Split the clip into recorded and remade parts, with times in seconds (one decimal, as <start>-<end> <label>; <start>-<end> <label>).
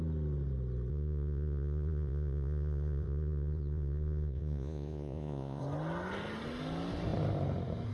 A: 0.0-0.9 recorded; 0.9-5.6 remade; 5.6-7.9 recorded